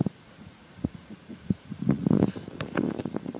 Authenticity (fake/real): fake